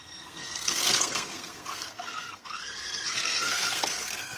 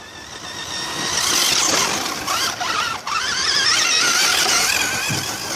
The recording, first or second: second